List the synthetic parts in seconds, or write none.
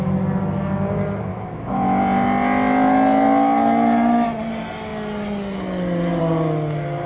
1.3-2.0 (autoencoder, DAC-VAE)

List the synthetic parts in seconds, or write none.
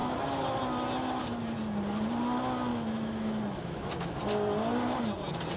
2.7-4.2 (autoencoder, DAC-VAE)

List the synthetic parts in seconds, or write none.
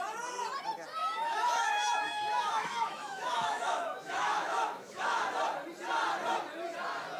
1.0-5.2 (autoencoder, DAC-VAE)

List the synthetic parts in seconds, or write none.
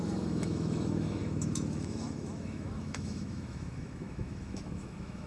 0.0-5.3 (autoencoder, DAC-VAE)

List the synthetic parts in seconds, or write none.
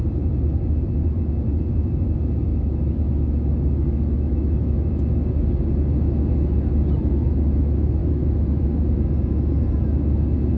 2.5-4.9 (autoencoder, DAC-VAE); 8.0-8.6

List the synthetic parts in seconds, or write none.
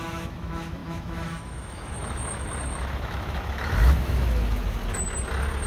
0.0-4.8 (autoencoder, DAC-VAE)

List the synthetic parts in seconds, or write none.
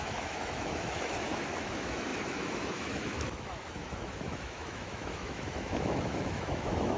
0.0-7.0 (autoencoder, DAC-VAE)